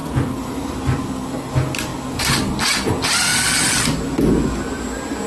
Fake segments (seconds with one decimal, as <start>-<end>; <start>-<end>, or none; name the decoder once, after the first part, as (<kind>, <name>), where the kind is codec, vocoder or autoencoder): none